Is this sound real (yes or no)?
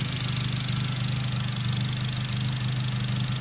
yes